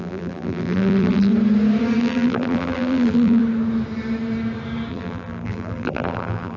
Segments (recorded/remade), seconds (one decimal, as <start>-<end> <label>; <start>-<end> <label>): 0.0-1.3 remade; 1.3-2.0 recorded; 2.0-3.4 remade; 3.4-4.9 recorded; 4.9-6.6 remade